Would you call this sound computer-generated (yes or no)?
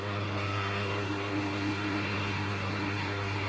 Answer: yes